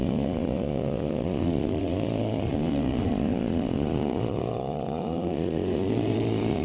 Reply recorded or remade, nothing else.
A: remade